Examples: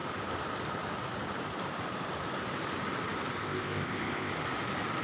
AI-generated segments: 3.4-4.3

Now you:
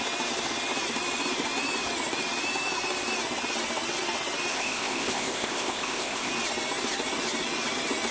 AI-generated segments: 4.5-6.3